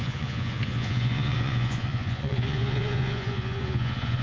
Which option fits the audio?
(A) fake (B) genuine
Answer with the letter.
A